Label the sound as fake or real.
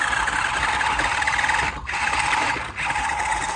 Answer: real